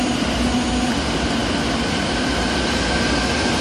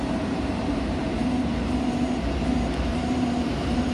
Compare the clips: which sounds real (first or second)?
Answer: first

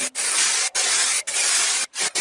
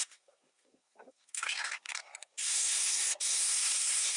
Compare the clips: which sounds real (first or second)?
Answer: first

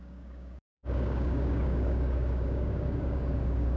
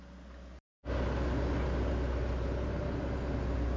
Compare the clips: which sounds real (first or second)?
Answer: second